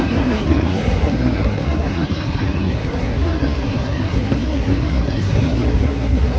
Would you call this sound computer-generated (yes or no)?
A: yes